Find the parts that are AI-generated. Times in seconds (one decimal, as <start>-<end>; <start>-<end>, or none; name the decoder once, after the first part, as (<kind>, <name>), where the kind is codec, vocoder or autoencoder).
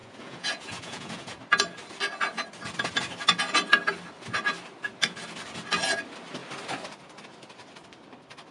0.0-1.4 (vocoder, Vocos)